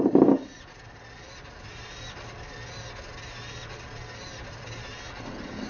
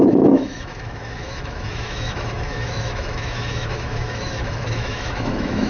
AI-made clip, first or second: second